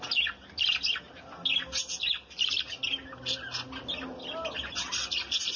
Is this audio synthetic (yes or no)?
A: no